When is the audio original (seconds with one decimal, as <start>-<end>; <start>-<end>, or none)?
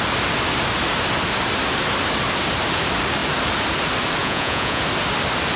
0.0-4.2; 4.8-5.6